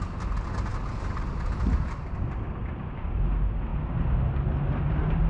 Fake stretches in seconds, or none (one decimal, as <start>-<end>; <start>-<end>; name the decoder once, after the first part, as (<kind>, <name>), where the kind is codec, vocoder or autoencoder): none